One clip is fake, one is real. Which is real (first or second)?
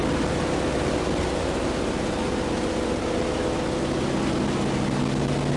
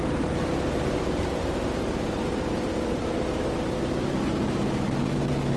first